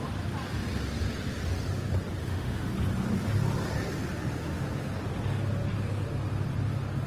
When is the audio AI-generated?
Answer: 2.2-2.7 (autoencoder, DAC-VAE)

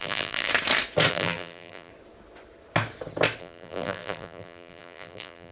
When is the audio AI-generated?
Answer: 0.0-0.5 (vocoder, BigVGAN v2); 1.1-1.9; 3.4-5.5